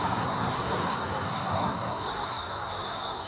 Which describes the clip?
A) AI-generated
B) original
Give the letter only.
A